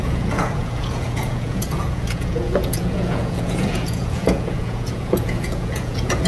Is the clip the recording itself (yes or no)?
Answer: no